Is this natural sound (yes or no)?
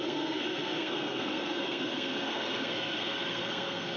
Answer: no